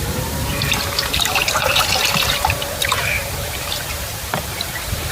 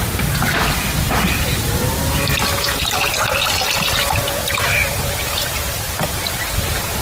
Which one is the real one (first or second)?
second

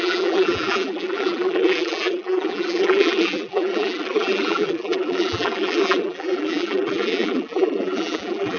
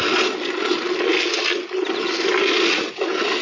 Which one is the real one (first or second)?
second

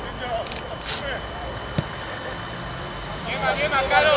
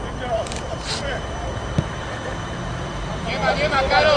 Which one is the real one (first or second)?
first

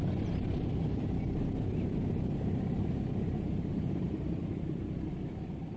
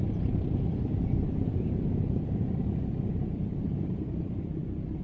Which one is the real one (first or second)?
first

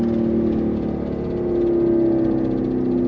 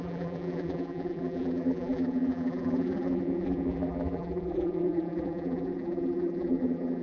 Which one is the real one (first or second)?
first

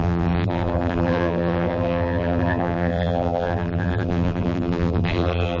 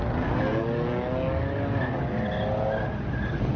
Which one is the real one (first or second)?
second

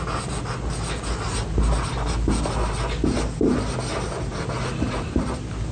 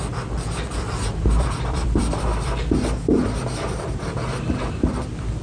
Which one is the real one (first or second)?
first